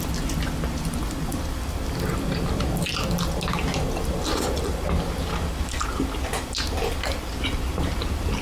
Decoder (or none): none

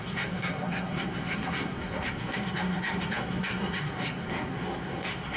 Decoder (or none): codec, SNAC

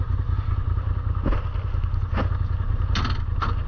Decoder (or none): none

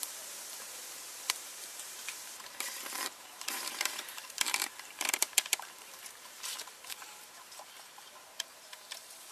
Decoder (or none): vocoder, BigVGAN v2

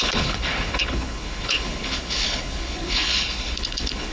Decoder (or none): codec, HILCodec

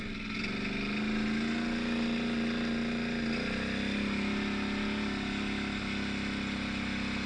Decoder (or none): none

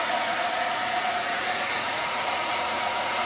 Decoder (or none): vocoder, Vocos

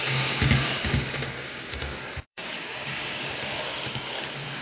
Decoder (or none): codec, DAC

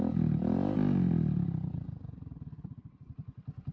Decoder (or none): none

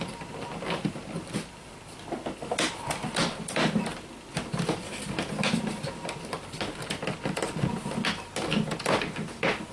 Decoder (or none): vocoder, BigVGAN v2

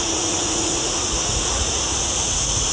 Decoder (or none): vocoder, Vocos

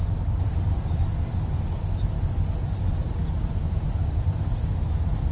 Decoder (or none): none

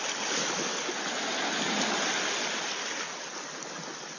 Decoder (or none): none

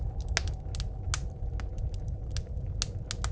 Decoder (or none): none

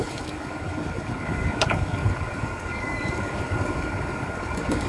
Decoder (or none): codec, DAC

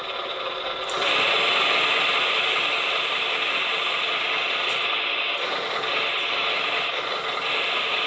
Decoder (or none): none